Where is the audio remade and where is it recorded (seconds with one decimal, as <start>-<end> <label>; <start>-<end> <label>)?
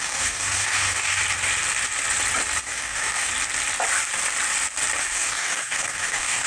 0.0-1.2 remade; 1.2-2.6 recorded; 2.6-3.3 remade; 3.3-5.0 recorded; 5.0-6.5 remade